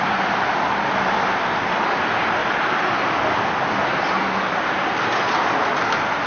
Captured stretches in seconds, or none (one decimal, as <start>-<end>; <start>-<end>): 0.0-2.4; 3.2-6.3